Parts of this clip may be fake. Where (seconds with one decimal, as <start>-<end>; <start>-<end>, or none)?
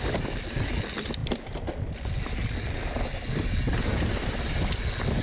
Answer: none